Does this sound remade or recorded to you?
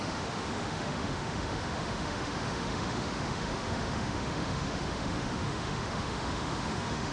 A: remade